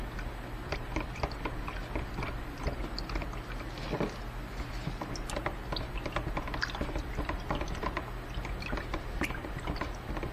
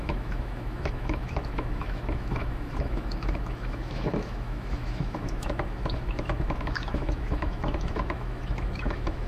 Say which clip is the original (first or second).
first